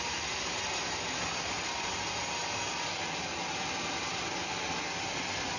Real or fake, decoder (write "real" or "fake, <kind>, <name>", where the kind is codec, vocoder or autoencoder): real